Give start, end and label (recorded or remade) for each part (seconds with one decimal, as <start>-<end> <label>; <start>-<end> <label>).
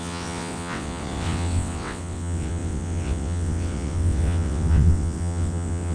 0.0-5.9 remade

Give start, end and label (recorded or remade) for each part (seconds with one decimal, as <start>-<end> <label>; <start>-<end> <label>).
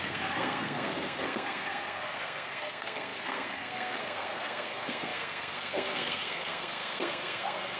0.0-7.8 remade